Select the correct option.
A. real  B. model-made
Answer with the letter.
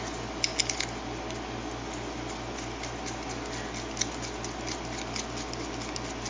A